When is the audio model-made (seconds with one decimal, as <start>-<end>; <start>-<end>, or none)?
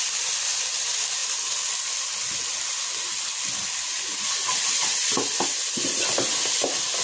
0.0-7.0